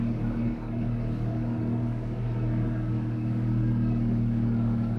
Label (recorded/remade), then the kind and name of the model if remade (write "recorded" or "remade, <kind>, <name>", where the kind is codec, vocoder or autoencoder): remade, codec, DAC